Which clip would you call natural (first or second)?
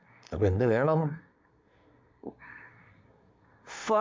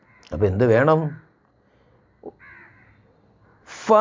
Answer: second